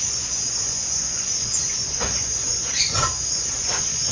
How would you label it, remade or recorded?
remade